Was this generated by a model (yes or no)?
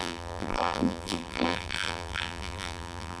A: yes